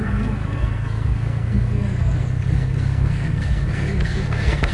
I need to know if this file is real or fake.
fake